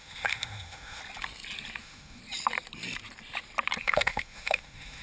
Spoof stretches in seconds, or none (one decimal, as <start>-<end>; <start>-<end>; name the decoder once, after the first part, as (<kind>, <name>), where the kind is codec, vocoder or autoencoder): 0.0-1.0 (autoencoder, DAC-VAE); 1.8-2.2; 3.8-5.0